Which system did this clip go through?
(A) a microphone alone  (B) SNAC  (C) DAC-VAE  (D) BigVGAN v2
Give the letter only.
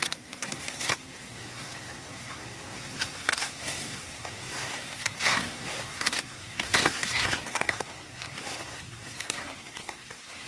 B